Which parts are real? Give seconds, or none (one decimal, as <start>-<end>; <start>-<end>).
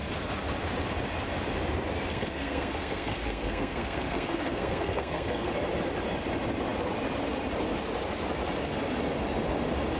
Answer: 0.0-2.1; 5.5-10.0